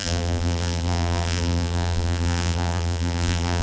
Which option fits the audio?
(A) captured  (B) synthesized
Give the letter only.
B